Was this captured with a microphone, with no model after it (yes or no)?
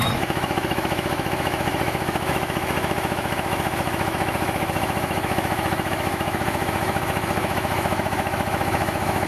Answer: no